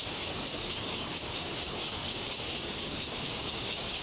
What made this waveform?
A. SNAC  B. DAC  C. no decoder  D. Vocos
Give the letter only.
B